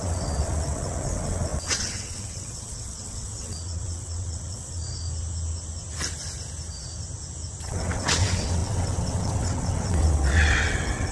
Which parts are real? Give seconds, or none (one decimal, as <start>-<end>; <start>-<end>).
4.8-7.6